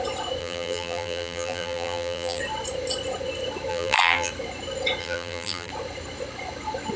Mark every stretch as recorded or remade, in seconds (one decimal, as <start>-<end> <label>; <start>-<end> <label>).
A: 0.0-0.4 recorded; 0.4-2.4 remade; 2.4-3.7 recorded; 3.7-4.3 remade; 4.3-5.0 recorded; 5.0-5.7 remade; 5.7-7.0 recorded